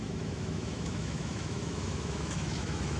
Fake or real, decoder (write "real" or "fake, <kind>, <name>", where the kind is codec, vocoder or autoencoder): fake, autoencoder, DAC-VAE